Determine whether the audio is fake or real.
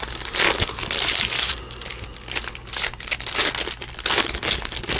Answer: real